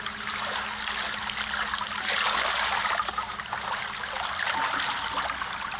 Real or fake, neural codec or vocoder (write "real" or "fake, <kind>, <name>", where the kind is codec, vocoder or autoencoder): real